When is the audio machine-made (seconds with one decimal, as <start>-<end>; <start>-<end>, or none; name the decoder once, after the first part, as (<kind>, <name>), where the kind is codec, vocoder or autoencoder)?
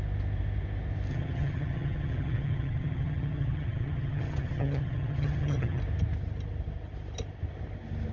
1.1-5.8 (vocoder, HiFi-GAN)